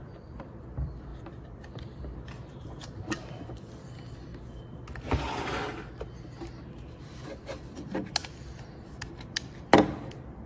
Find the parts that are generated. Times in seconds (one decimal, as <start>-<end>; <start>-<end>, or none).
0.0-4.3; 7.0-10.5